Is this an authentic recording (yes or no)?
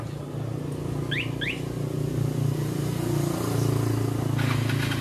yes